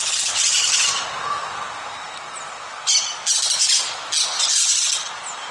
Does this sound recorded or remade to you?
recorded